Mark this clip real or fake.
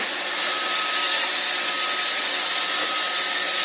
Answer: real